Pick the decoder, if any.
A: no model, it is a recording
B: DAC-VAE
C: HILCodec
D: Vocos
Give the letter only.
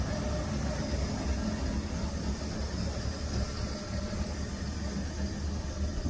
A